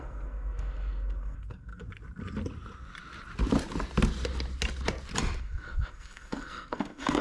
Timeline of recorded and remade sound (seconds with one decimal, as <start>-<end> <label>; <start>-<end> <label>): 0.0-1.8 remade; 1.8-5.4 recorded; 5.4-7.2 remade